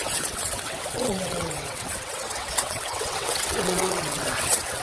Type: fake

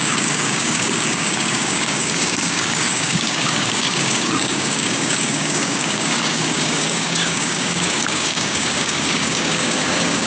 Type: fake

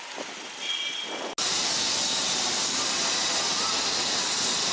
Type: real